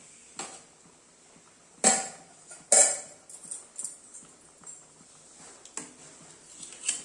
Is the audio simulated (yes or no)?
no